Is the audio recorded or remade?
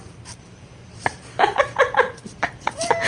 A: remade